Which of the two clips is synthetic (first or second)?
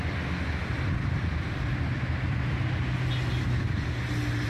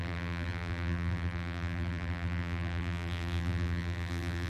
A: second